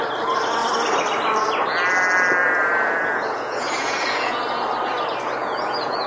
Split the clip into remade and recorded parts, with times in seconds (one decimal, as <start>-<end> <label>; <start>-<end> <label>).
0.0-2.4 recorded; 2.4-4.4 remade; 4.4-5.4 recorded; 5.4-6.1 remade